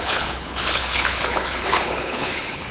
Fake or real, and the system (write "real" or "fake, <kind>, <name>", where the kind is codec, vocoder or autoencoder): fake, codec, HILCodec